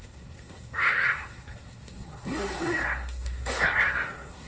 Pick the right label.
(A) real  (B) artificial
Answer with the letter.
B